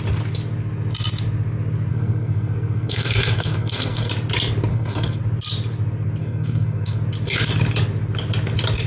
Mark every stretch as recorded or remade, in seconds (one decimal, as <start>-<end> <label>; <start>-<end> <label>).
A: 0.0-1.9 recorded; 1.9-4.1 remade; 4.1-4.7 recorded; 4.7-5.2 remade; 5.2-6.2 recorded; 6.2-7.0 remade; 7.0-8.9 recorded